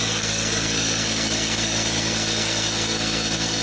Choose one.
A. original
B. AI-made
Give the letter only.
B